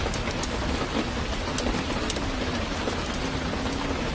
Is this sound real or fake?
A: real